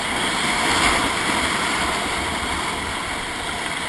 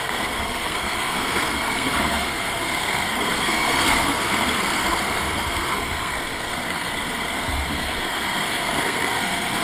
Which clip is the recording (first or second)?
first